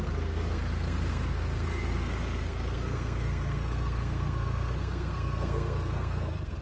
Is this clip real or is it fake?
fake